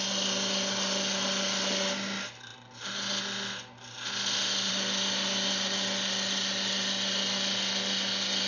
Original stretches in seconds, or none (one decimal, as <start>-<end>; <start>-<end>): 0.0-8.5